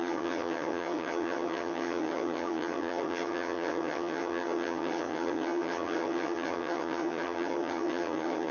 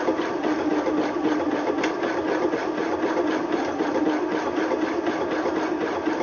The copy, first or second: first